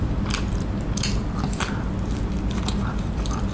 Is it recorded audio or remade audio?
recorded